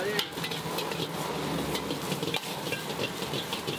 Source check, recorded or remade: recorded